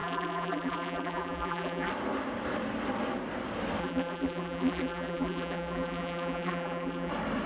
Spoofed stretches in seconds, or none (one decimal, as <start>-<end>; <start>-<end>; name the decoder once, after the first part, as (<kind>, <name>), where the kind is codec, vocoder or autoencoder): 0.0-1.9 (vocoder, BigVGAN v2); 3.8-7.1